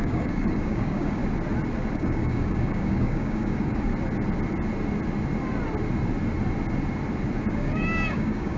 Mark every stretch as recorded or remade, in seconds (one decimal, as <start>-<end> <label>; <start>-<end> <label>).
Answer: 0.0-1.2 remade; 1.2-1.9 recorded; 1.9-3.9 remade; 3.9-7.5 recorded; 7.5-8.6 remade